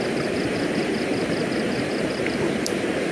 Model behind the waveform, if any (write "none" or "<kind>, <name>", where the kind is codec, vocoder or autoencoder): vocoder, BigVGAN v2